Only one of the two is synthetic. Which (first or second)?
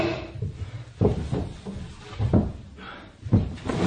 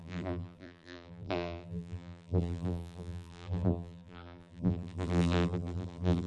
second